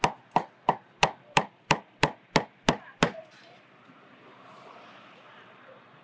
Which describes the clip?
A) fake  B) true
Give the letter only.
B